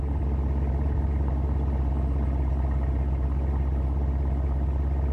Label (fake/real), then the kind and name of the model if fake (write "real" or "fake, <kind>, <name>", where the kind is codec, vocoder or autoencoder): real